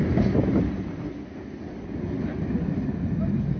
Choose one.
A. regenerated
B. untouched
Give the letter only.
B